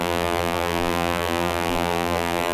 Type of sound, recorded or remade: remade